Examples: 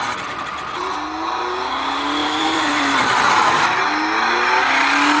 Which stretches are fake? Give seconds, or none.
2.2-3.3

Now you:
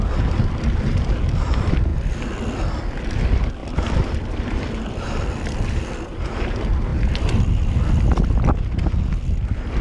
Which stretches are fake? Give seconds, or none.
3.6-5.8

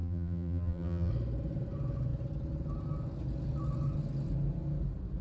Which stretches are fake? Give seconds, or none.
0.0-1.1

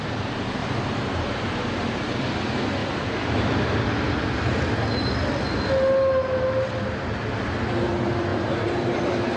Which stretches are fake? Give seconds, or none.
0.6-1.6; 2.8-4.6; 8.3-9.4

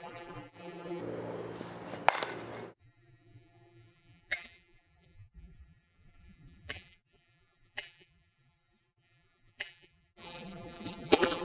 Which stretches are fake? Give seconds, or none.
0.0-1.0; 2.8-11.4

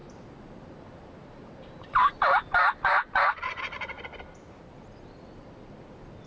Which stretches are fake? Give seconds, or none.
0.0-3.6

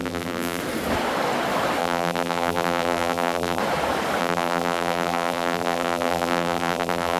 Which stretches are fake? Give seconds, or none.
0.0-0.6; 1.8-3.6; 4.2-7.2